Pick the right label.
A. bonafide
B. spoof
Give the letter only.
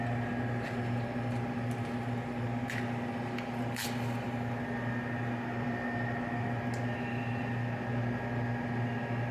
A